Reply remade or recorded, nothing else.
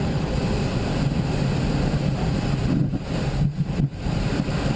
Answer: recorded